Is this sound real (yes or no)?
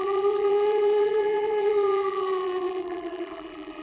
no